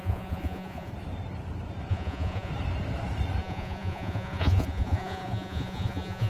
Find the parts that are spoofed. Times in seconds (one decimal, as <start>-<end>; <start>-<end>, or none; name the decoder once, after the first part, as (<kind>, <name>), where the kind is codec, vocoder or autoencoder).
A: 0.0-0.9 (vocoder, Vocos); 1.9-2.5; 3.4-6.3